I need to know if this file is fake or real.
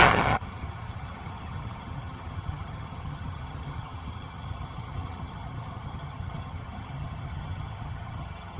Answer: fake